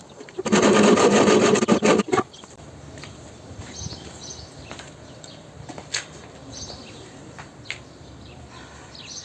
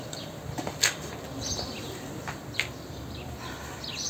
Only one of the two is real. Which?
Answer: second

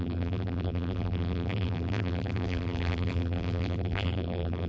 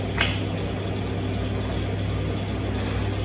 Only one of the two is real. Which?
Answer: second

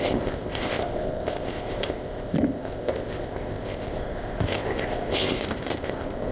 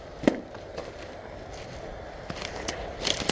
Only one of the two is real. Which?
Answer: second